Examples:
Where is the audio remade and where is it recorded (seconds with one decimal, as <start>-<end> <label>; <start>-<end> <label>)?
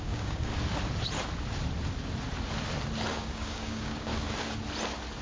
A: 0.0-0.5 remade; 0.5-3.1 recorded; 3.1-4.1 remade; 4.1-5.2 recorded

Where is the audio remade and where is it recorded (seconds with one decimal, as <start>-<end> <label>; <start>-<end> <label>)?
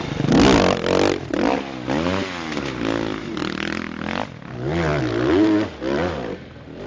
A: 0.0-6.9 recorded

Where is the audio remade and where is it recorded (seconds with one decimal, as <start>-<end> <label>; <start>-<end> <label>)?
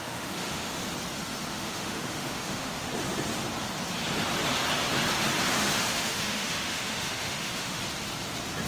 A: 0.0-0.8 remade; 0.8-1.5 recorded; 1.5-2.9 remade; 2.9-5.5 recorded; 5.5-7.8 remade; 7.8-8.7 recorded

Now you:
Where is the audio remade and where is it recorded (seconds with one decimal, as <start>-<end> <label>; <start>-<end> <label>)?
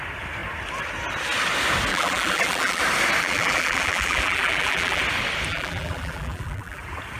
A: 0.0-1.9 recorded; 1.9-2.8 remade; 2.8-3.2 recorded; 3.2-5.0 remade; 5.0-5.5 recorded; 5.5-6.8 remade; 6.8-7.2 recorded